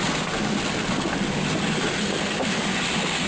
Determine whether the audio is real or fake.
real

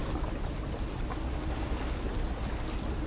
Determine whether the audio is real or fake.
real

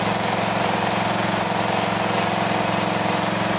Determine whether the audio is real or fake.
real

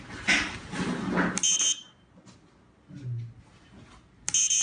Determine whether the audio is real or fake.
real